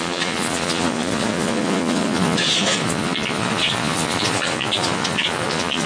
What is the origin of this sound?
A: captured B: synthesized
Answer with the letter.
B